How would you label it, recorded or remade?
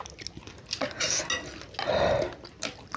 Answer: recorded